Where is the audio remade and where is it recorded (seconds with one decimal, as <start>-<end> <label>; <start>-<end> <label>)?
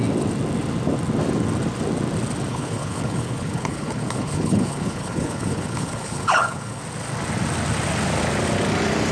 0.0-2.5 recorded; 2.5-6.8 remade; 6.8-9.1 recorded